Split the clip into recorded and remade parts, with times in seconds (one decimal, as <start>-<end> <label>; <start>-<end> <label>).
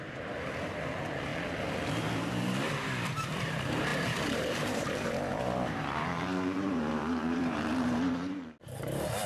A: 0.0-1.3 remade; 1.3-3.3 recorded; 3.3-9.3 remade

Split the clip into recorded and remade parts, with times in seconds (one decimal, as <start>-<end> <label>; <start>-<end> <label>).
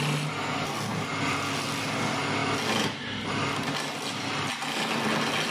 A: 0.0-5.5 recorded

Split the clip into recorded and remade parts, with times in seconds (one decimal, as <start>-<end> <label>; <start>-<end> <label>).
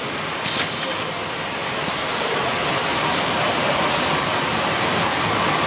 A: 0.0-1.6 recorded; 1.6-5.0 remade; 5.0-5.7 recorded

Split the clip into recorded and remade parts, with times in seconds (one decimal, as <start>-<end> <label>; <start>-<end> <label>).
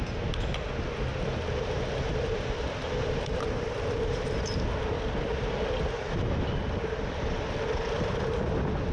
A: 0.0-1.1 recorded; 1.1-5.4 remade; 5.4-6.6 recorded; 6.6-7.9 remade; 7.9-8.9 recorded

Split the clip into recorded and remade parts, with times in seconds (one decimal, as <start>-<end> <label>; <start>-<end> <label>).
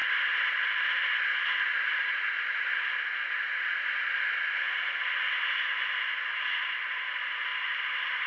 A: 0.0-0.9 remade; 0.9-7.5 recorded; 7.5-8.3 remade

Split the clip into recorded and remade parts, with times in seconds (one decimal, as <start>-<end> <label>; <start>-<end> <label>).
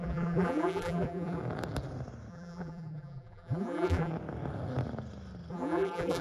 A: 0.0-1.4 remade; 1.4-2.3 recorded; 2.3-4.1 remade; 4.1-5.5 recorded; 5.5-6.2 remade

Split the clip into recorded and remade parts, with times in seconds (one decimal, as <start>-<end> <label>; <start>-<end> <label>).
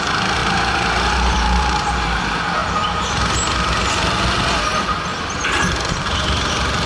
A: 0.0-0.4 recorded; 0.4-2.2 remade; 2.2-5.1 recorded; 5.1-6.5 remade; 6.5-6.9 recorded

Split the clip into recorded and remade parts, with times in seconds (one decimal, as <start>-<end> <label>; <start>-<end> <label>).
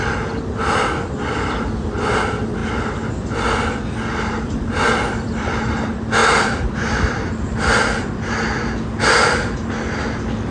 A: 0.0-6.2 recorded; 6.2-8.3 remade; 8.3-10.5 recorded